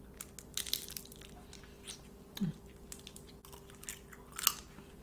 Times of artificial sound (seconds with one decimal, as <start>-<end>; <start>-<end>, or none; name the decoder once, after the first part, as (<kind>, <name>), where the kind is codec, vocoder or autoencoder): 1.7-2.5 (vocoder, BigVGAN v2)